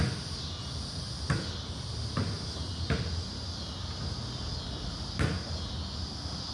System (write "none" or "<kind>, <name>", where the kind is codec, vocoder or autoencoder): none